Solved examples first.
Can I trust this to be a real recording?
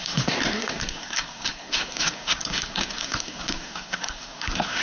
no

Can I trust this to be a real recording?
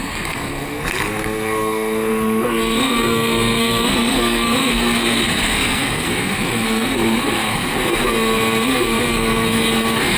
no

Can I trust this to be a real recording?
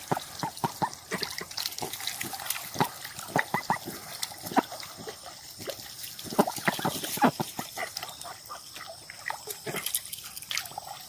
yes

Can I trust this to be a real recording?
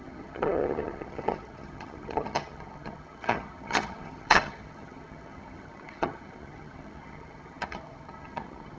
no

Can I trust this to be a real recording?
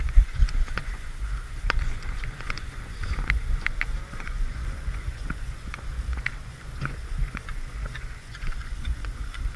no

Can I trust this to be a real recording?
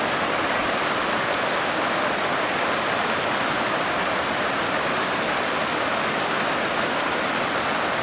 yes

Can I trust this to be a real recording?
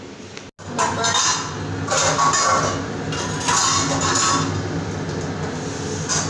yes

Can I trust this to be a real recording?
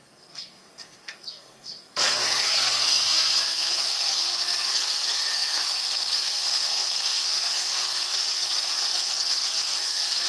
no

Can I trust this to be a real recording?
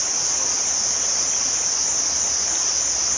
yes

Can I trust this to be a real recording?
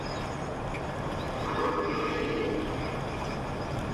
yes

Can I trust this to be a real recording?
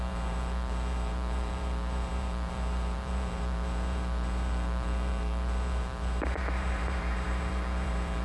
no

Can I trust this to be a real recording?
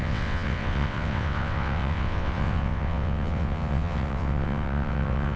no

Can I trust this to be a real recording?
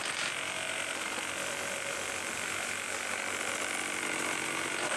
yes